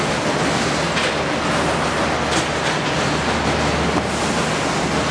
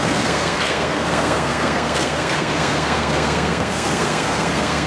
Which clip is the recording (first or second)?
first